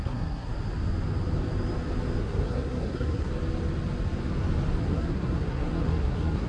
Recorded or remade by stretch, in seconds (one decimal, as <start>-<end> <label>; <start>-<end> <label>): 0.0-0.5 remade; 0.5-2.2 recorded; 2.2-3.3 remade; 3.3-4.8 recorded; 4.8-6.5 remade